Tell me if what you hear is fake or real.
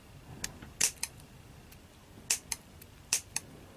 real